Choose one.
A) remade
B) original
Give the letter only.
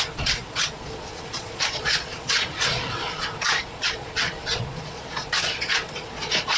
A